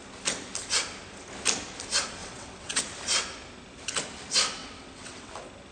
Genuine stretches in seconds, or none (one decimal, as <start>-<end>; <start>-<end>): 0.0-2.2; 2.8-4.6; 5.3-5.7

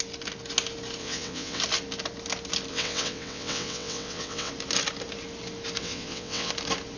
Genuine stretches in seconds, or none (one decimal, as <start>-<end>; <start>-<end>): 0.0-1.0; 1.6-2.7; 4.5-5.8; 6.5-7.0